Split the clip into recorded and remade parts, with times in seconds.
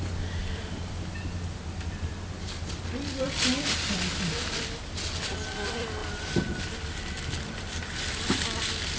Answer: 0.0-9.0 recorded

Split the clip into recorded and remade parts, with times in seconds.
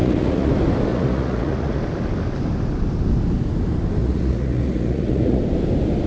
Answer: 0.0-0.5 remade; 0.5-0.9 recorded; 0.9-1.8 remade; 1.8-4.0 recorded; 4.0-5.4 remade; 5.4-6.1 recorded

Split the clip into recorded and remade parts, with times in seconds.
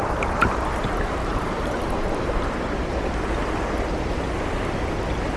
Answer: 0.0-0.4 recorded; 0.4-3.1 remade; 3.1-5.4 recorded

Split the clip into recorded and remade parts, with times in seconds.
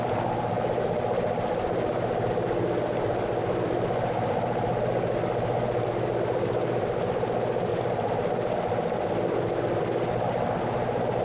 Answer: 0.0-11.2 recorded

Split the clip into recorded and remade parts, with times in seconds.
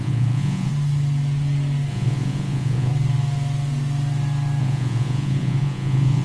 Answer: 0.0-0.7 remade; 0.7-1.9 recorded; 1.9-2.9 remade; 2.9-4.6 recorded; 4.6-6.2 remade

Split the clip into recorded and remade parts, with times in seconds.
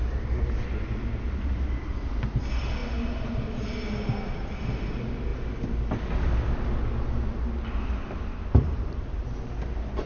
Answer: 0.0-10.1 recorded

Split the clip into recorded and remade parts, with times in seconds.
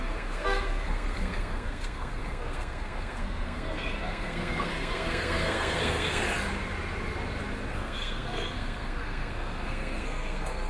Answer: 0.0-6.2 remade; 6.2-7.7 recorded; 7.7-10.7 remade